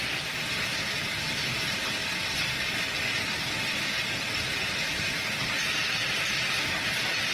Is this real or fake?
real